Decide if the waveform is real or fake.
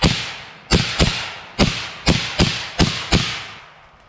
real